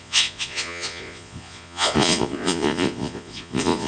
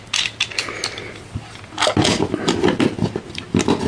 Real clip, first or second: second